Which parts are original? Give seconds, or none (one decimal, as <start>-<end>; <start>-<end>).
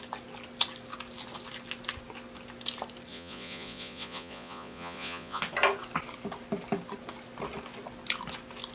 0.0-3.1; 5.4-8.7